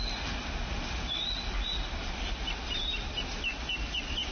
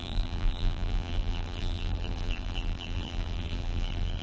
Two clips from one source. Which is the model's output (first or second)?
second